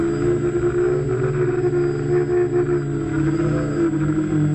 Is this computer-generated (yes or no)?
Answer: no